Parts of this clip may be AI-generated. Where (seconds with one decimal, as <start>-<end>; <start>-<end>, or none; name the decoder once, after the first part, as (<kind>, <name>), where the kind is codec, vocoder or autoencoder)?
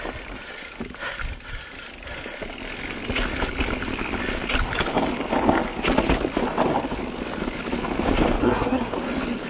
8.4-8.9 (codec, SNAC)